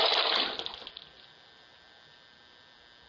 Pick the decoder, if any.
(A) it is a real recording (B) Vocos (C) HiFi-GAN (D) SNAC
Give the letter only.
A